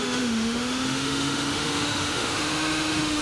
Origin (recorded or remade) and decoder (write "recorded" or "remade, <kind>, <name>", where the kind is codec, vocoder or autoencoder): remade, autoencoder, DAC-VAE